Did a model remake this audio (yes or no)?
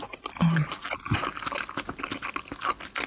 no